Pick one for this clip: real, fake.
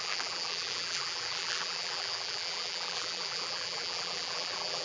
fake